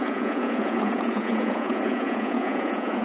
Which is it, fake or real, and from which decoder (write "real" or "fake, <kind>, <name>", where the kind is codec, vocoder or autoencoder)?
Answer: fake, vocoder, Vocos